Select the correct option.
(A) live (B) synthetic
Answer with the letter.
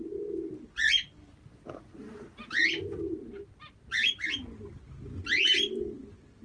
A